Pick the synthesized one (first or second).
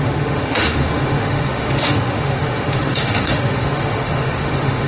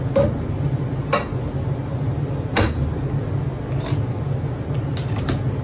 first